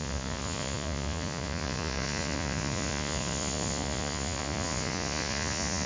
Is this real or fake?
fake